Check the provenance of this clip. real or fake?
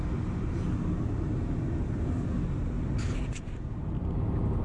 real